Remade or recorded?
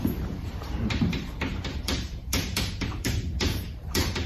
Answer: remade